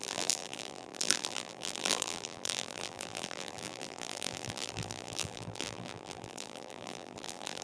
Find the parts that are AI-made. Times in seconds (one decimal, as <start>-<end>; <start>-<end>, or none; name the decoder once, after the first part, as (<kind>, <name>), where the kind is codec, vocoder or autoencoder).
0.0-7.6 (vocoder, BigVGAN v2)